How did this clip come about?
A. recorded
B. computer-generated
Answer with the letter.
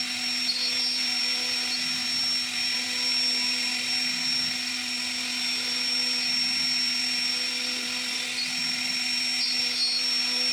A